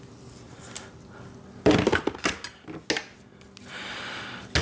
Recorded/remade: recorded